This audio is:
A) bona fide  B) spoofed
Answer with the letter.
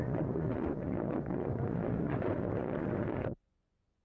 B